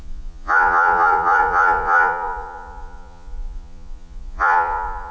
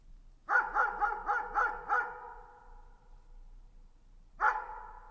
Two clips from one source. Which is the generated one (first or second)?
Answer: first